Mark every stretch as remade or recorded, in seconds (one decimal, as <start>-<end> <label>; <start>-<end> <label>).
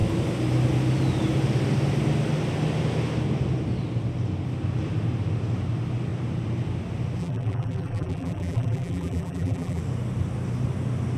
0.0-7.2 recorded; 7.2-9.8 remade; 9.8-11.2 recorded